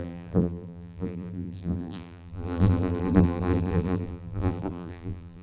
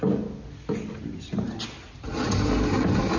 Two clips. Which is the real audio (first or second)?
second